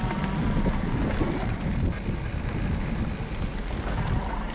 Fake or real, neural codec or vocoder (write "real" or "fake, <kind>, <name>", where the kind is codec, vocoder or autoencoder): real